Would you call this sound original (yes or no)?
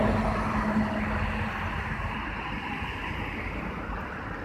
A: yes